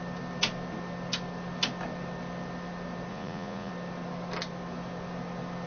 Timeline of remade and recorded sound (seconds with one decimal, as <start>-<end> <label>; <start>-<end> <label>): 0.0-3.1 recorded; 3.1-3.7 remade; 3.7-5.7 recorded